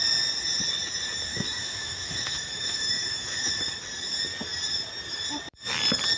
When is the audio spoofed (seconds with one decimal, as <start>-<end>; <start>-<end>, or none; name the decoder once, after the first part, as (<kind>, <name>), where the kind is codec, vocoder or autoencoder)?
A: 1.3-3.5 (autoencoder, DAC-VAE)

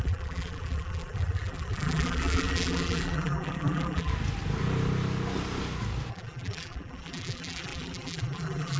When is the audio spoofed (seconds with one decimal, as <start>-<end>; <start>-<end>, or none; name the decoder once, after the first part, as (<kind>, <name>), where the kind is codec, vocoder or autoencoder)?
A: 0.0-4.1 (vocoder, BigVGAN v2); 6.1-8.8

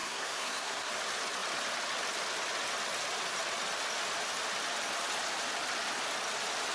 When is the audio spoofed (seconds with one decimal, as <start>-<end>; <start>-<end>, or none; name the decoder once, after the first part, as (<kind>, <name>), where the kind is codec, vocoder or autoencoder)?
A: 0.0-0.9 (codec, SNAC)